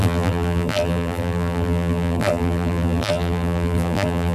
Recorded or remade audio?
remade